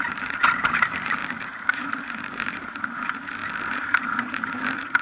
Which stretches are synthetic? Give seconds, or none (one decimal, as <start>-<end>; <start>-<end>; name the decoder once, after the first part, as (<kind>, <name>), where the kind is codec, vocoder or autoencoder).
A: 0.0-1.2 (vocoder, BigVGAN v2); 1.7-3.4; 4.0-5.0